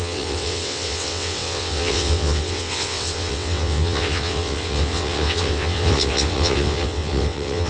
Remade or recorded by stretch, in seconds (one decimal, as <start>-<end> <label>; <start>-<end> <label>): 0.0-7.7 remade